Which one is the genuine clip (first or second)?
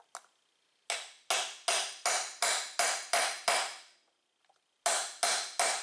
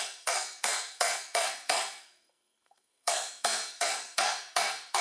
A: first